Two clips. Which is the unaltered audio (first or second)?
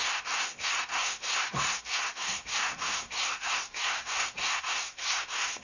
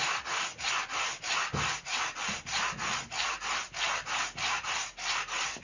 second